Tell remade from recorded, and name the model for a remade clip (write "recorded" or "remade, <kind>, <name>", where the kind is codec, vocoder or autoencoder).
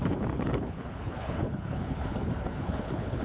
remade, codec, HILCodec